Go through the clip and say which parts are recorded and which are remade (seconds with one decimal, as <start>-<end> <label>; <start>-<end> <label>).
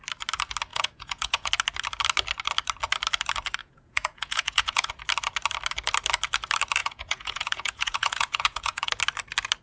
0.0-0.7 recorded; 0.7-1.5 remade; 1.5-3.6 recorded; 3.6-4.9 remade; 4.9-6.8 recorded; 6.8-8.9 remade; 8.9-9.6 recorded